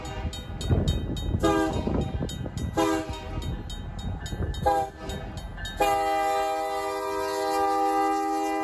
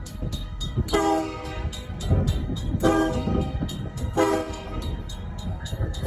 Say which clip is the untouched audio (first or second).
first